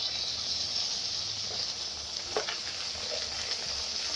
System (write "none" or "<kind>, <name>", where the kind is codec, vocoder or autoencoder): none